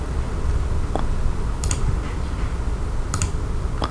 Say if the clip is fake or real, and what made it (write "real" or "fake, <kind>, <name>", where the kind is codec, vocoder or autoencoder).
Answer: real